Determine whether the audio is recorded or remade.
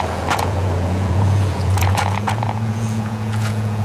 remade